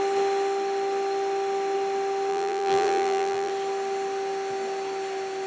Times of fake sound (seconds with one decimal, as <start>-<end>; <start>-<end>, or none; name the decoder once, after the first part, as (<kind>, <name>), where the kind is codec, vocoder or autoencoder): 2.3-3.5 (vocoder, BigVGAN v2)